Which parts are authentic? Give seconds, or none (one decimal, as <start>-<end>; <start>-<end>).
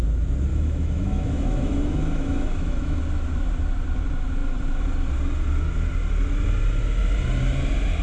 0.0-0.5; 3.0-8.0